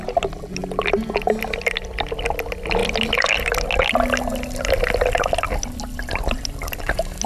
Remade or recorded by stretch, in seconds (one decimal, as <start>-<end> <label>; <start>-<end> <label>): 0.0-7.3 recorded